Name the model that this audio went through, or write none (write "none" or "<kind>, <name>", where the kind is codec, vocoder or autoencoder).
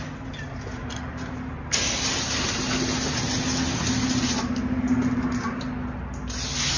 none